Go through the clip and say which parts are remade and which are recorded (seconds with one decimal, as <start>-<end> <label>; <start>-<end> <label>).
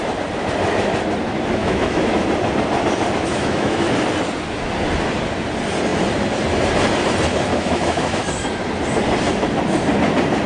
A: 0.0-1.6 recorded; 1.6-2.2 remade; 2.2-3.3 recorded; 3.3-3.9 remade; 3.9-7.5 recorded; 7.5-8.2 remade; 8.2-10.5 recorded